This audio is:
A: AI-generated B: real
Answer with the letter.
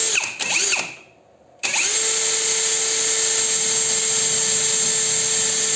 B